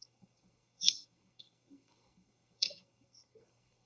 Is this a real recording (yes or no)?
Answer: no